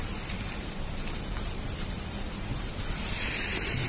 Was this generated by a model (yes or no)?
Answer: yes